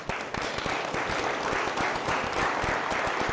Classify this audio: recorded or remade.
remade